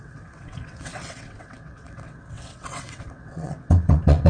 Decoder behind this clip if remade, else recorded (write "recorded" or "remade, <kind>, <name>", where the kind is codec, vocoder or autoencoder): remade, vocoder, WaveNeXt